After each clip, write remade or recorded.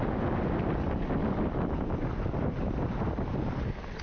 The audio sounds recorded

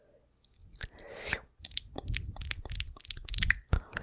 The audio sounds recorded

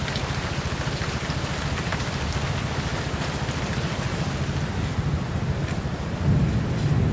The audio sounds recorded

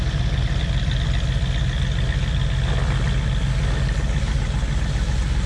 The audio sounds recorded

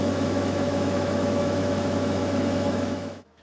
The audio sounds remade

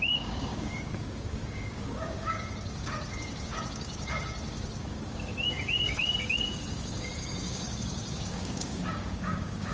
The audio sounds remade